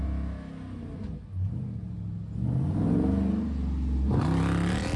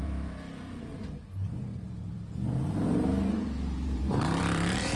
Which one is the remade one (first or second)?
second